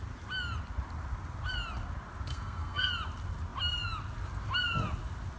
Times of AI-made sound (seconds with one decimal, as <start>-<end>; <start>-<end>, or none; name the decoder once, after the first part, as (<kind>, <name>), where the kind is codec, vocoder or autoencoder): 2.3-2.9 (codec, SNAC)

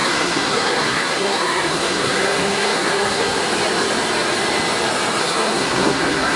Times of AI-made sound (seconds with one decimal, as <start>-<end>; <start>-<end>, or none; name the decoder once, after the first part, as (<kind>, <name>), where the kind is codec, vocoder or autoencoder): 0.0-3.4 (codec, SNAC); 5.2-6.4

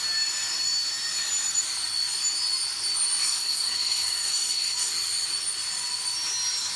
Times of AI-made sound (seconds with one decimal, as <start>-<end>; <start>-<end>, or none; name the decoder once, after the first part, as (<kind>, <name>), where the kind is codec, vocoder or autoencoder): 3.2-4.9 (codec, SNAC)

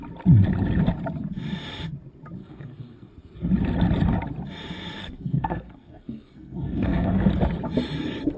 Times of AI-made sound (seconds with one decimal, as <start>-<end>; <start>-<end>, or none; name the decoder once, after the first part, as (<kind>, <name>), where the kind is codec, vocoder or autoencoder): 2.4-3.1 (codec, SNAC); 5.0-7.3